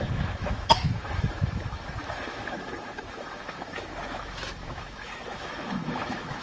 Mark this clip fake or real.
fake